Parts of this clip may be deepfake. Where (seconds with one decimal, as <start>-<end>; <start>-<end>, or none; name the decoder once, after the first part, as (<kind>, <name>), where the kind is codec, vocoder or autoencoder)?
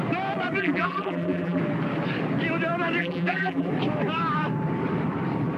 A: 0.6-1.6 (vocoder, BigVGAN v2); 3.0-3.7